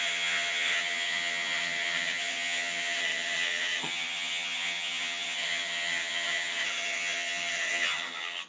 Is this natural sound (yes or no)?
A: no